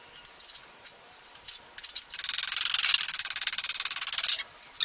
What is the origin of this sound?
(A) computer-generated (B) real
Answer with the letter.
B